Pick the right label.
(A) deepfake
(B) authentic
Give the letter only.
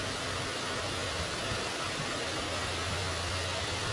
B